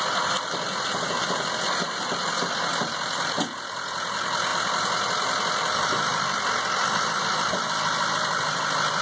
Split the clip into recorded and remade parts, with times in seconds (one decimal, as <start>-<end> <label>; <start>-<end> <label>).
0.0-9.0 recorded